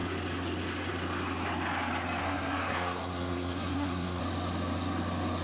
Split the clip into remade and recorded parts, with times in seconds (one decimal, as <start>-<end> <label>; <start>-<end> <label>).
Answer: 0.0-2.2 recorded; 2.2-4.2 remade; 4.2-5.4 recorded